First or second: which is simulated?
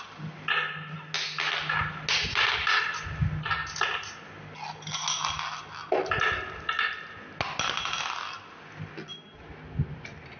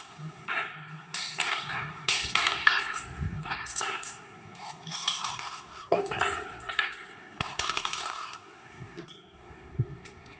second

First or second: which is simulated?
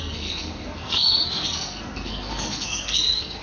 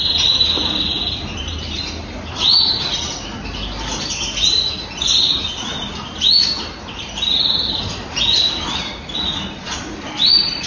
first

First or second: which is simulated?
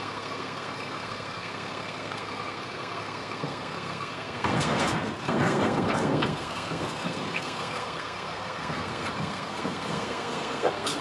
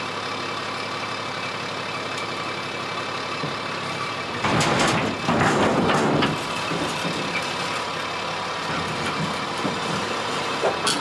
first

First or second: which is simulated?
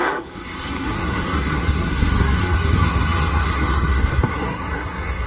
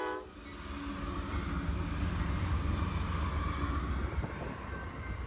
first